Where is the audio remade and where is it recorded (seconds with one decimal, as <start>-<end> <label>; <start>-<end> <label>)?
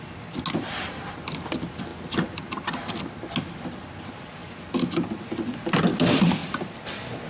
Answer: 0.0-7.3 recorded